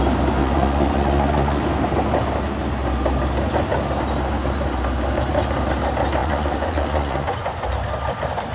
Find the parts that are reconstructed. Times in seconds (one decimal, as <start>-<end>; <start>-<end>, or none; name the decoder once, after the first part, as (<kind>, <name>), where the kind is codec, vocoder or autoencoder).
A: 0.4-1.6 (vocoder, Vocos); 6.2-7.7